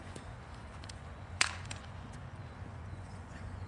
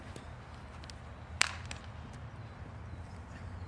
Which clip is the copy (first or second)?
first